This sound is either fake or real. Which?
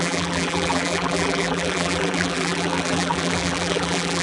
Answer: fake